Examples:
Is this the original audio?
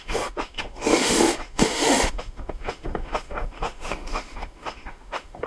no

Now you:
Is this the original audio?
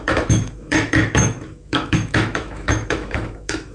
no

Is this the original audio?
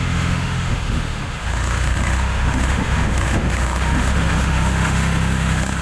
no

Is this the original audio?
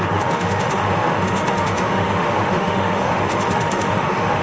no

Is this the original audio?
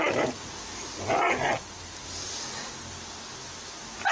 yes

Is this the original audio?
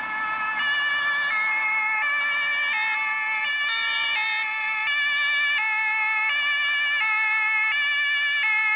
yes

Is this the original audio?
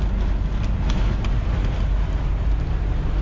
yes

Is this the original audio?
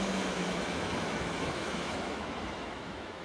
no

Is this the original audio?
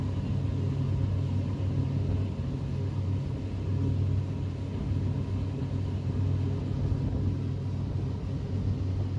yes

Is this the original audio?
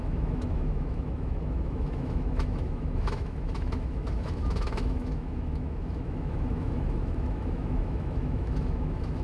no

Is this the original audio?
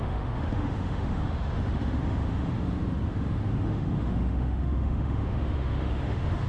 no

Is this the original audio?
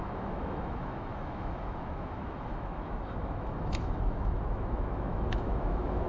no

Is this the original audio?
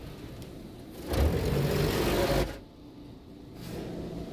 yes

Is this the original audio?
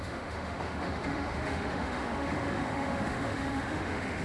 no